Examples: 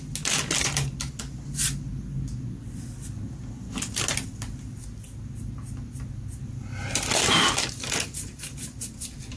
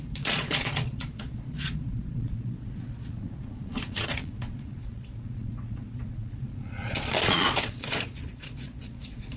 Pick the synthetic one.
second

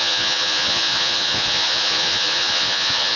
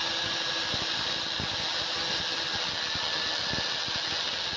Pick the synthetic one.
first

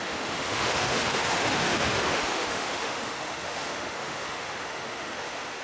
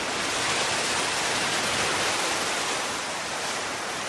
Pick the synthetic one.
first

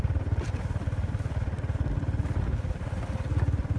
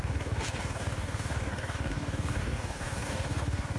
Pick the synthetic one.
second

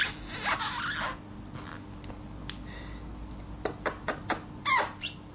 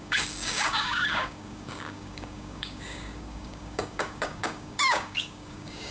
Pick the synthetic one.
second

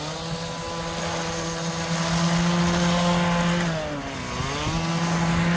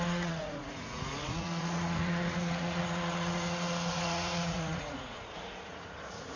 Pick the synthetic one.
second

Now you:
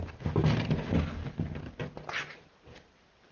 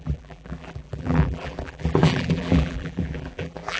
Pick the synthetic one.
second